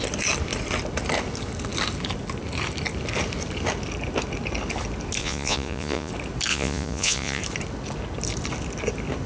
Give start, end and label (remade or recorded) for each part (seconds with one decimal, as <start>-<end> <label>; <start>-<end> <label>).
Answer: 0.0-5.2 recorded; 5.2-6.1 remade; 6.1-6.5 recorded; 6.5-7.4 remade; 7.4-9.3 recorded